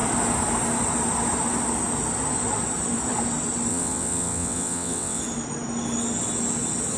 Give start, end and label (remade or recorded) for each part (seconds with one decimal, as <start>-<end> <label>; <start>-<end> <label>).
0.0-3.7 recorded; 3.7-5.2 remade; 5.2-7.0 recorded